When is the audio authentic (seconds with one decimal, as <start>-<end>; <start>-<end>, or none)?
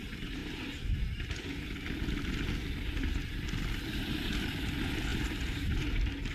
0.0-0.4; 1.0-6.3